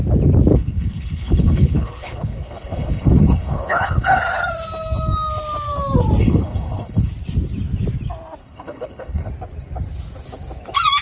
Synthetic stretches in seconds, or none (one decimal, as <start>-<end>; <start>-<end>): 0.5-4.2; 6.2-7.1; 8.4-9.3